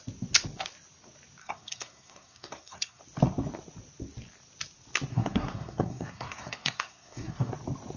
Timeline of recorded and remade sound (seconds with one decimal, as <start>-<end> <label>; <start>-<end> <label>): 0.0-1.4 recorded; 1.4-3.0 remade; 3.0-5.1 recorded; 5.1-7.5 remade; 7.5-8.0 recorded